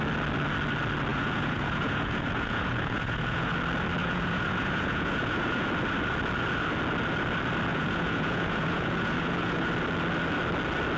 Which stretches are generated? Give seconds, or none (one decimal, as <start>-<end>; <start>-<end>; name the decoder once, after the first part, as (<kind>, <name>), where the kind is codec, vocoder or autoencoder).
1.1-3.5 (vocoder, Vocos); 4.0-5.7; 7.7-9.7